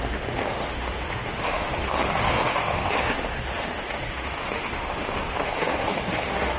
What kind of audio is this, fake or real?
fake